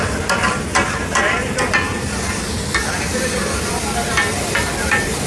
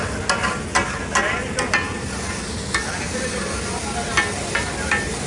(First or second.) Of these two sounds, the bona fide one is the second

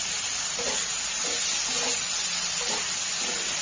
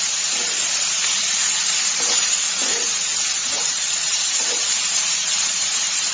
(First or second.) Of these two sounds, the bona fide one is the first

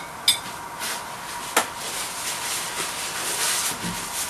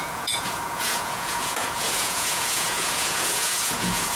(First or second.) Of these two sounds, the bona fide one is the first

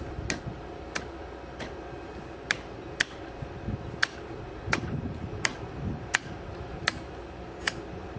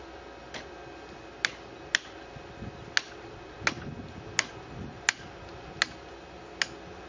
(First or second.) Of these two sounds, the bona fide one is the second